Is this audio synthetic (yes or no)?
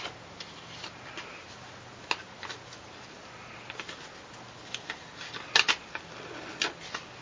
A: no